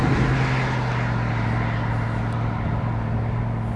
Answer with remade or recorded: recorded